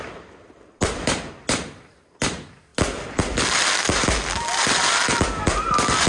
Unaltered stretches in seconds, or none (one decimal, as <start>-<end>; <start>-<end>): 0.0-6.1

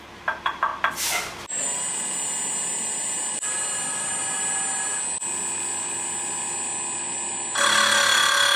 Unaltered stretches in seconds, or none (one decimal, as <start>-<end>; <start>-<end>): 0.0-8.6

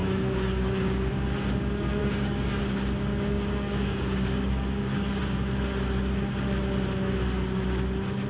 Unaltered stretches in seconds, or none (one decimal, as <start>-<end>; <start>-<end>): 1.1-2.0; 2.6-3.1; 5.2-8.3